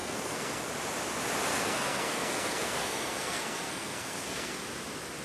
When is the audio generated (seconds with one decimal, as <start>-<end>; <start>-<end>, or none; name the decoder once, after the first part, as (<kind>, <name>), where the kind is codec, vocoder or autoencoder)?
0.0-0.7 (codec, SNAC); 1.5-4.6